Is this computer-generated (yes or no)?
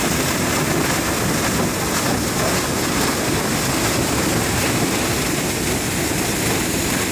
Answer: no